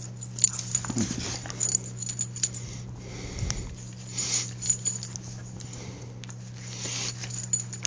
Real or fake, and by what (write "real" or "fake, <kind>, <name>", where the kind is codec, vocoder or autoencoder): real